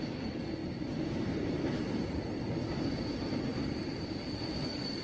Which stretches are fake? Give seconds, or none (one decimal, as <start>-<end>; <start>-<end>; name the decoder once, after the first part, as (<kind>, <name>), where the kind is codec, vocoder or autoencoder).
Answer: 3.5-4.4 (vocoder, BigVGAN v2)